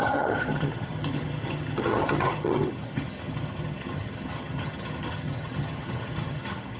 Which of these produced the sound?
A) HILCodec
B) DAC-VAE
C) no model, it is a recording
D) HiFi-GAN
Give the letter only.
D